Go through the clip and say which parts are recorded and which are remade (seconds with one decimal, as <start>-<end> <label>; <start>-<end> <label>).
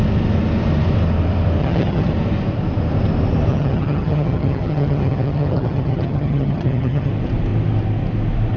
0.0-1.6 recorded; 1.6-2.1 remade; 2.1-3.5 recorded; 3.5-7.1 remade; 7.1-8.6 recorded